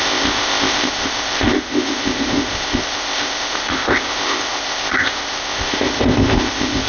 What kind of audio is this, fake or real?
fake